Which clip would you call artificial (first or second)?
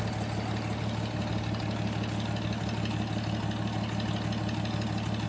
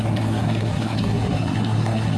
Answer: second